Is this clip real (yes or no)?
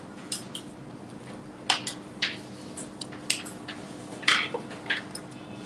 yes